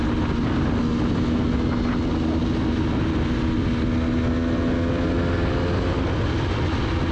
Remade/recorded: recorded